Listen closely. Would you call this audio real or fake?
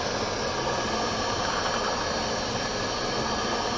real